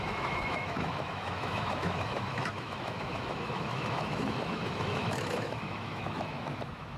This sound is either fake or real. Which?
fake